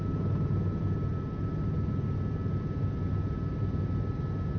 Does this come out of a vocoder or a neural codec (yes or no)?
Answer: no